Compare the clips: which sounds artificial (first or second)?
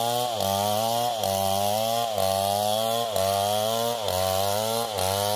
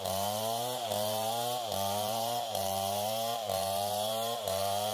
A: second